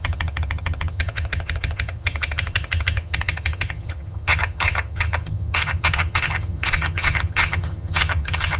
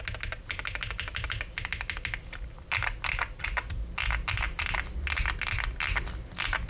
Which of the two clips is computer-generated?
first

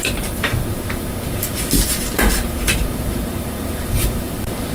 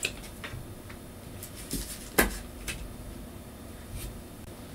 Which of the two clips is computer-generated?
first